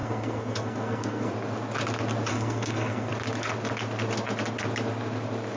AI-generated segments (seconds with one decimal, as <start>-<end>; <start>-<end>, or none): 0.0-1.3; 2.3-3.1